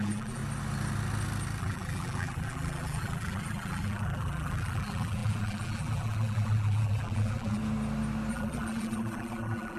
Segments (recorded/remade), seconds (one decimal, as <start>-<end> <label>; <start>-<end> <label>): 0.0-0.4 remade; 0.4-1.6 recorded; 1.6-7.6 remade; 7.6-8.3 recorded; 8.3-9.8 remade